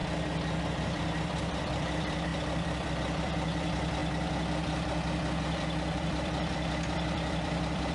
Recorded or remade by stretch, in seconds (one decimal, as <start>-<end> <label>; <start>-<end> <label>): 0.0-0.6 recorded; 0.6-4.0 remade; 4.0-5.4 recorded; 5.4-7.9 remade